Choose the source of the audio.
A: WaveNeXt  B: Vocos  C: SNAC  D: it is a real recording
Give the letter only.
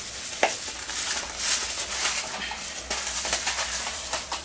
D